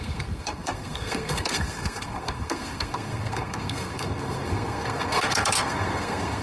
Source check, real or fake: fake